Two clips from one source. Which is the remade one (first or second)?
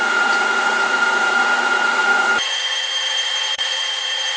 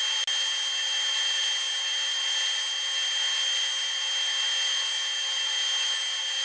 first